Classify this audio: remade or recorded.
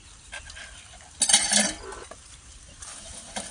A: recorded